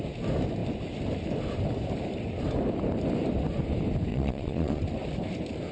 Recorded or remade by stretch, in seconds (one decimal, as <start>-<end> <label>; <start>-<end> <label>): 0.0-4.1 recorded; 4.1-4.8 remade; 4.8-5.7 recorded